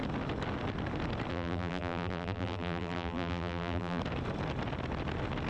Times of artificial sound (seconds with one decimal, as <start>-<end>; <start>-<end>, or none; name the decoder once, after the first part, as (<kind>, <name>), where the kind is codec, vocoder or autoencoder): 1.3-4.0 (vocoder, BigVGAN v2)